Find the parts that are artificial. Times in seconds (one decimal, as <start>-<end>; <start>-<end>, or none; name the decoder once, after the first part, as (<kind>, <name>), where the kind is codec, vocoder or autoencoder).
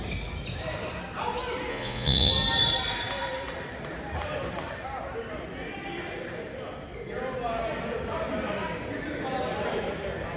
1.7-2.3 (vocoder, Vocos)